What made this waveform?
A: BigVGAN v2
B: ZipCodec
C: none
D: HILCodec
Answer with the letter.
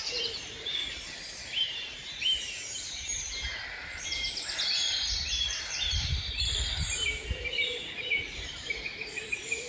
A